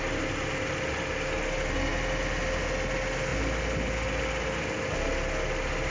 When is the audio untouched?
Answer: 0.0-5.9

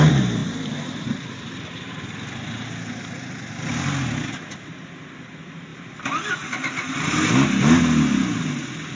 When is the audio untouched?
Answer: 0.0-0.4; 1.0-5.7; 6.3-8.9

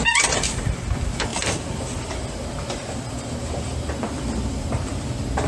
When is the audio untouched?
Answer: none

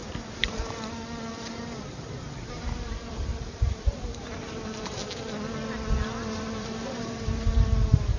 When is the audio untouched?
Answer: 0.0-1.3; 5.0-6.2

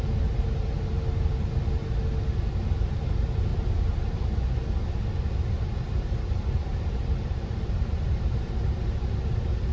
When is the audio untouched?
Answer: 1.8-2.9; 3.5-5.9

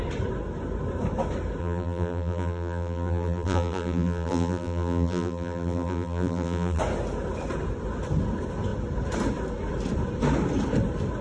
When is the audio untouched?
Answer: 0.0-1.6; 6.8-11.2

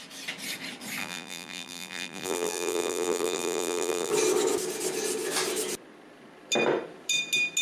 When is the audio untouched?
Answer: 0.0-1.0; 4.1-7.6